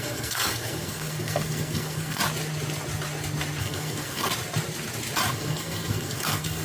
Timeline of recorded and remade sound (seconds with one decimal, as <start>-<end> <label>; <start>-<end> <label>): 0.0-2.2 remade; 2.2-3.6 recorded; 3.6-4.3 remade; 4.3-5.3 recorded; 5.3-6.6 remade